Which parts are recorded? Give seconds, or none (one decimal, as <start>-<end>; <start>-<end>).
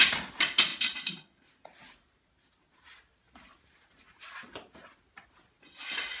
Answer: 0.0-6.2